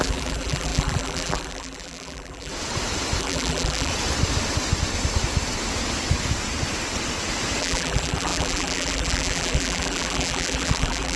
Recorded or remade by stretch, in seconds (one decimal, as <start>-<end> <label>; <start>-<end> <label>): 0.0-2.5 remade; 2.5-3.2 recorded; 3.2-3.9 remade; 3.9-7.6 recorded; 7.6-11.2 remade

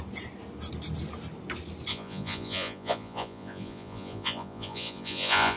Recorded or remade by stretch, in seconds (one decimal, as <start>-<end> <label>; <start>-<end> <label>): 0.0-1.9 recorded; 1.9-5.6 remade

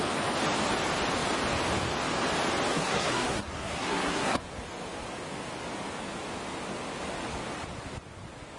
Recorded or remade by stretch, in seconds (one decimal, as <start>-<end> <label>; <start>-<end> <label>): 0.0-2.7 recorded; 2.7-4.4 remade; 4.4-8.6 recorded

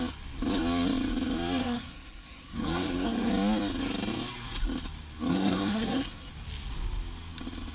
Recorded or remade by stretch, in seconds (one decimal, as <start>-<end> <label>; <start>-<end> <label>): 0.0-1.6 recorded; 1.6-3.3 remade; 3.3-5.3 recorded; 5.3-6.3 remade; 6.3-7.7 recorded

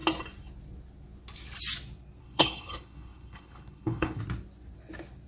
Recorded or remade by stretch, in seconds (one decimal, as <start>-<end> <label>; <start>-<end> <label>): 0.0-2.2 recorded; 2.2-4.2 remade; 4.2-5.3 recorded